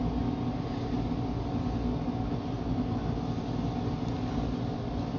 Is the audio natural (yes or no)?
yes